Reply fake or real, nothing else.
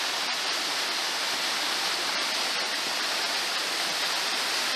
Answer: real